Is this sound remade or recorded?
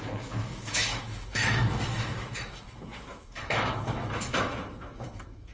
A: remade